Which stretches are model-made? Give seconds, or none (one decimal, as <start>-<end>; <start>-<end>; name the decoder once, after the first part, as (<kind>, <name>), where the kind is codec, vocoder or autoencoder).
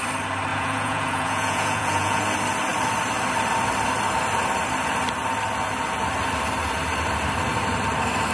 0.5-2.2 (vocoder, Vocos)